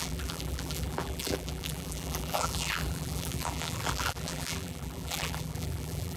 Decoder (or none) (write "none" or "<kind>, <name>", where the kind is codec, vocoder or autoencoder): vocoder, BigVGAN v2